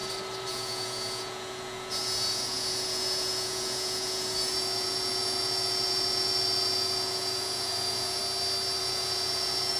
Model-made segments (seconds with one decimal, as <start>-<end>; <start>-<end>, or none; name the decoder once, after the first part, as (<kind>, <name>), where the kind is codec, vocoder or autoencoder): 0.5-8.2 (vocoder, Vocos); 8.8-9.8